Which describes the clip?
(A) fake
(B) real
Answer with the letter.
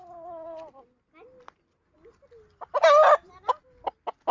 B